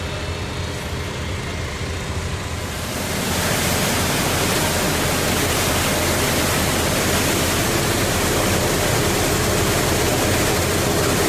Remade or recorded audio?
recorded